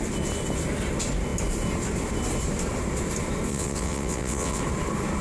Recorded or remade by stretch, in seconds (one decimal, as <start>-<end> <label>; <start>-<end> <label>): 0.0-3.5 recorded; 3.5-4.6 remade; 4.6-5.2 recorded